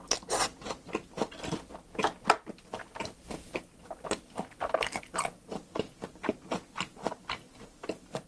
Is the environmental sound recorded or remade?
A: recorded